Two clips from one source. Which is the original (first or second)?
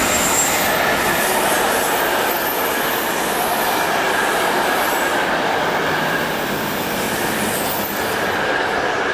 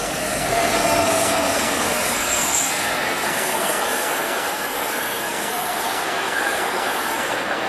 first